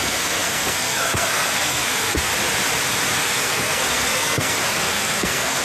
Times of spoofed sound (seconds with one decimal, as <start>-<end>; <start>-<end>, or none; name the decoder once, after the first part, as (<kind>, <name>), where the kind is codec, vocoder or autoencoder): 0.0-2.3 (codec, SNAC); 3.2-5.6